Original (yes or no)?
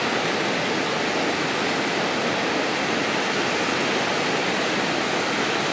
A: yes